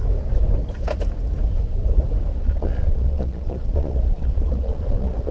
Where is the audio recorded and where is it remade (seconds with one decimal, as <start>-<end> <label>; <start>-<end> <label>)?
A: 0.0-2.4 recorded; 2.4-5.3 remade